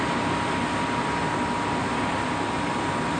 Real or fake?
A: real